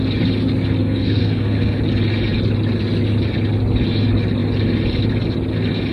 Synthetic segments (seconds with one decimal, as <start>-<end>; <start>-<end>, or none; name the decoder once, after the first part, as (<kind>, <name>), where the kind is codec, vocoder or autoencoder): 0.8-1.8 (codec, SNAC)